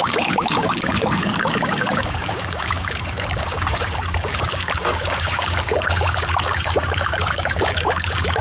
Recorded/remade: remade